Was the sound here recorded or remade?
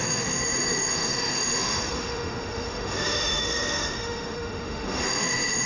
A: remade